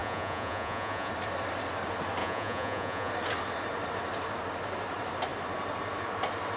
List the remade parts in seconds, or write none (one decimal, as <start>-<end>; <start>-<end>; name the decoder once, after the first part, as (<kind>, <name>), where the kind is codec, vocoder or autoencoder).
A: 0.0-1.1 (vocoder, Vocos); 2.2-3.1